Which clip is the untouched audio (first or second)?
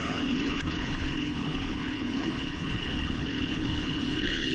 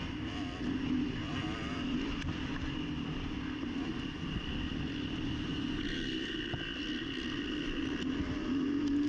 second